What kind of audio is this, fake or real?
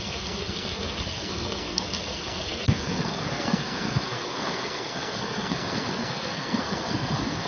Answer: fake